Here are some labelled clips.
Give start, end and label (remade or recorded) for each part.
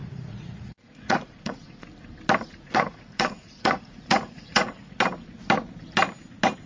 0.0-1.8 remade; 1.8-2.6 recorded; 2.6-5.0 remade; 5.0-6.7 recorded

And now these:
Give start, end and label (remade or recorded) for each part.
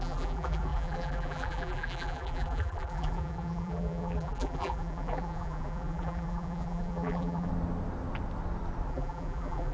0.0-7.5 remade; 7.5-8.9 recorded; 8.9-9.7 remade